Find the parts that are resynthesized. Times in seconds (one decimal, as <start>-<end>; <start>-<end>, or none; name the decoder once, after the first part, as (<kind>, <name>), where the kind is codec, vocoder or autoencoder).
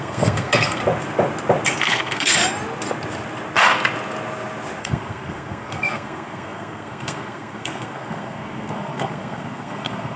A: 0.0-0.8 (codec, SNAC); 1.8-2.4; 4.8-10.2